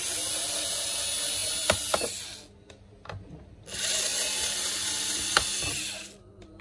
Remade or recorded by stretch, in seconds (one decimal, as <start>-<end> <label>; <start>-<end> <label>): 0.0-6.6 recorded